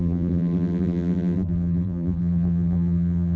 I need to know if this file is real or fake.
fake